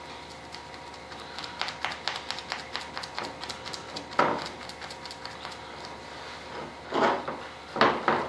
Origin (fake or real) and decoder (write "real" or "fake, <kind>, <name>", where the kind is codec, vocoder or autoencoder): real